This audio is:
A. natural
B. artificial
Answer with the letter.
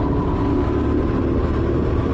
A